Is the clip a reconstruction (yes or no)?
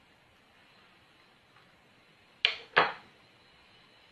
no